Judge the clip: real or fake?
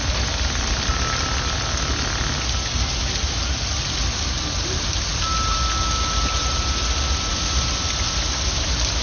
real